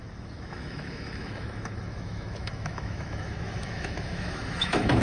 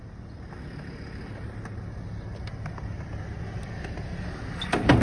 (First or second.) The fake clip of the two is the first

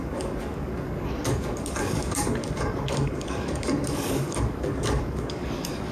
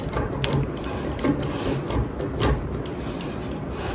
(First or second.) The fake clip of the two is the first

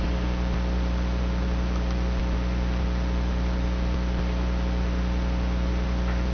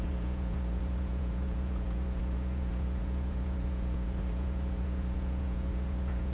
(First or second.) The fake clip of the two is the second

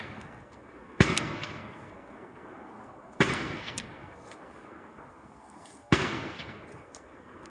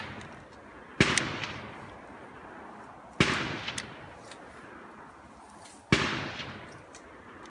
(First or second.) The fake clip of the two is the first